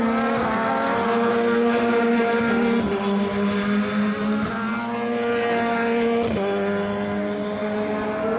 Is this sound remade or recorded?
recorded